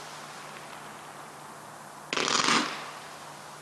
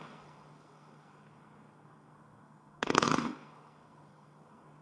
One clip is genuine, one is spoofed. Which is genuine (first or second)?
first